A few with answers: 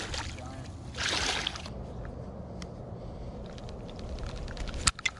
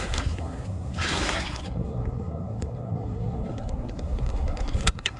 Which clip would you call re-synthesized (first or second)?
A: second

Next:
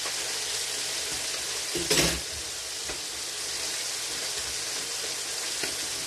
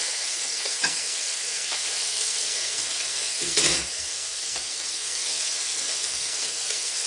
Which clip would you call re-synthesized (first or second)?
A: second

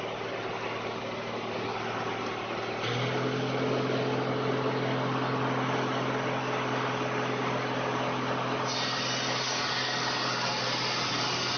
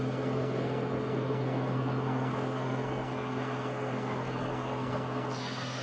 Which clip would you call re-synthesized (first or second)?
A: second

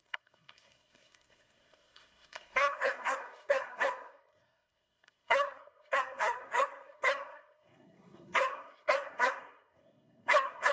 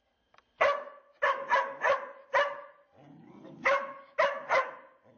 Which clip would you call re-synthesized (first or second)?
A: first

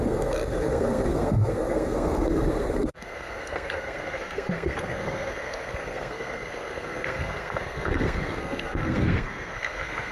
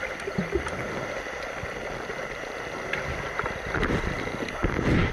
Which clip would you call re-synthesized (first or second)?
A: first